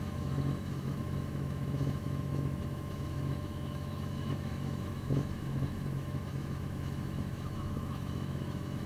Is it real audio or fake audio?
fake